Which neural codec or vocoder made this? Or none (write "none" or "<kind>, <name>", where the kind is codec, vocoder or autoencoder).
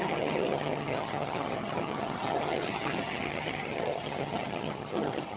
vocoder, HiFi-GAN